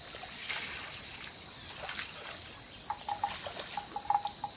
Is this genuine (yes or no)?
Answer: yes